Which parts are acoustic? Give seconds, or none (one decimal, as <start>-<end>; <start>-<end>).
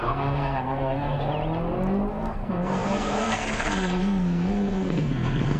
1.3-2.1